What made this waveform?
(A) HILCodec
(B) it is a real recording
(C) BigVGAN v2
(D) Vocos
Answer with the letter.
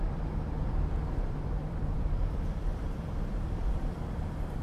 C